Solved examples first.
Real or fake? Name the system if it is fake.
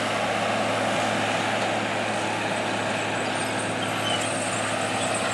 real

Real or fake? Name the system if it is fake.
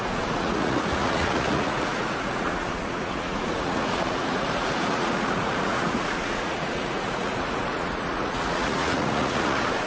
fake, vocoder, Vocos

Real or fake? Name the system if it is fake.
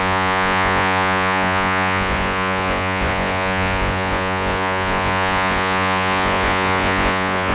fake, vocoder, Vocos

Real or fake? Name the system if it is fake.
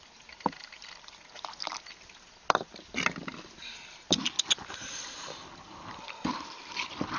real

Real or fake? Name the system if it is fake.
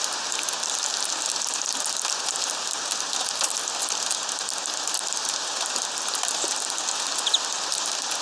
real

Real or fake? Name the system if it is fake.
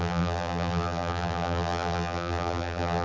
fake, vocoder, BigVGAN v2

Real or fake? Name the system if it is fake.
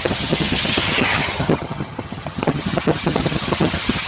fake, vocoder, HiFi-GAN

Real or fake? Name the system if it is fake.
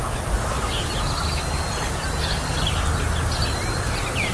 fake, vocoder, BigVGAN v2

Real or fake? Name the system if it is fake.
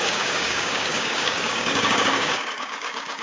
fake, codec, DAC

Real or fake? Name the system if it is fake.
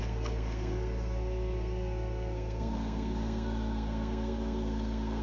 fake, codec, SNAC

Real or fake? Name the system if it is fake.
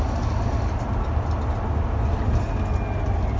real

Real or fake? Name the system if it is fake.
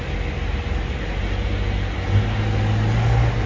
real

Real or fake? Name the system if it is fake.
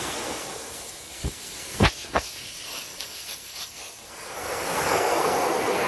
fake, codec, SNAC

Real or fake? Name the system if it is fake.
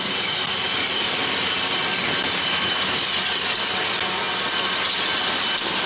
real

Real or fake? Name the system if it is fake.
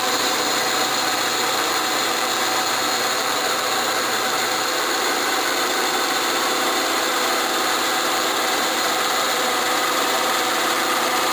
fake, vocoder, BigVGAN v2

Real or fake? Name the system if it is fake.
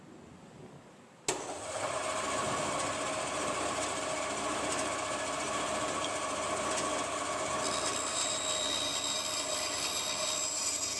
real